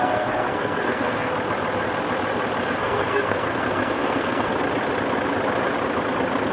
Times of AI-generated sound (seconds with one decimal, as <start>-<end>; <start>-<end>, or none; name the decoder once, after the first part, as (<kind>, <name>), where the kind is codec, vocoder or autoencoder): 0.0-1.3 (codec, SNAC); 2.6-4.5